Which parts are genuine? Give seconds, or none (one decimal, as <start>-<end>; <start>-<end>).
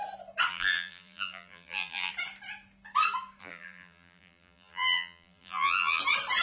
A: 0.0-0.5; 2.1-3.4; 6.0-6.4